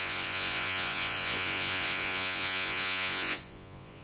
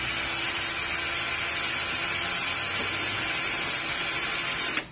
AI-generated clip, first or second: first